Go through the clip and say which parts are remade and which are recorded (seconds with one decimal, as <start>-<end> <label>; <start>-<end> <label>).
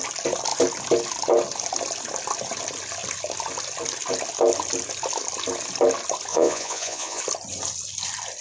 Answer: 0.0-6.3 recorded; 6.3-7.2 remade; 7.2-8.4 recorded